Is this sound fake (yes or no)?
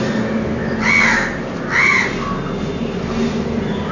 no